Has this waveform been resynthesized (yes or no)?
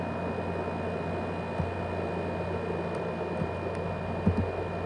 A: no